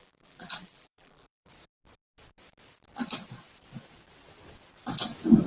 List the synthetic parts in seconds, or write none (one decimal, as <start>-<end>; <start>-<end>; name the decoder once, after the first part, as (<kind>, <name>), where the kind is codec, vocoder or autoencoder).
0.0-1.5 (vocoder, BigVGAN v2)